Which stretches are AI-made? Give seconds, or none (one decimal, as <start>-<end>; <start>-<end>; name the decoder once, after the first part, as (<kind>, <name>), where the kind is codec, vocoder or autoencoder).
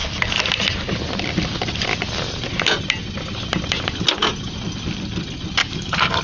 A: 5.6-6.2 (codec, DAC)